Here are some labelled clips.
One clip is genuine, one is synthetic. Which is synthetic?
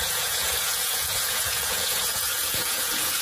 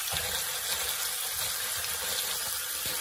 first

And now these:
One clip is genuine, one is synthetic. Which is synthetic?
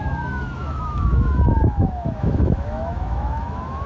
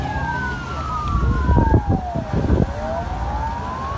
first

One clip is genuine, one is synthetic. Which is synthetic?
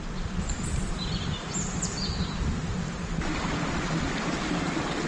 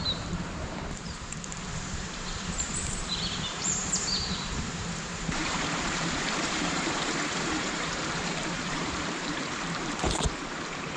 second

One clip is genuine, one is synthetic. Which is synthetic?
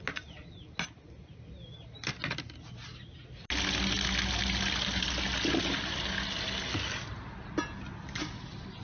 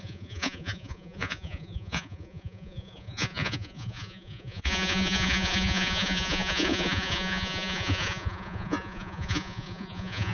second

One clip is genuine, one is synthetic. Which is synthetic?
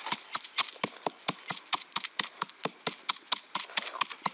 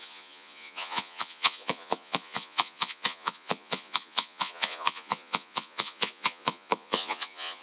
second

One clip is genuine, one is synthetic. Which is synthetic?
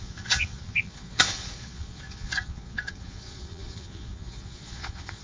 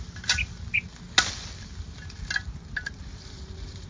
first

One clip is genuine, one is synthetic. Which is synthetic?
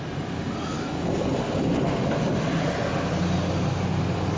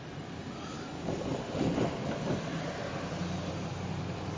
second